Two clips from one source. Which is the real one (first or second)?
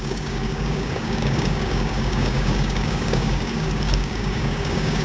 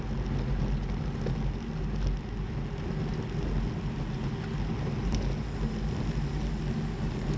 second